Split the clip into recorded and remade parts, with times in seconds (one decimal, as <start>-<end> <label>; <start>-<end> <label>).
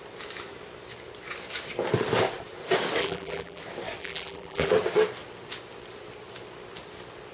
0.0-3.0 recorded; 3.0-3.6 remade; 3.6-4.0 recorded; 4.0-4.7 remade; 4.7-7.3 recorded